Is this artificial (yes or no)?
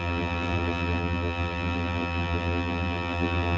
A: yes